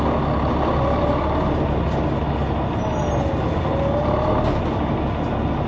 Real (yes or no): yes